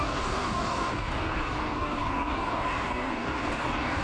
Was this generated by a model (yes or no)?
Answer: yes